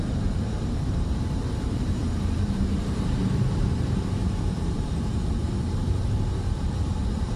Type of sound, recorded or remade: remade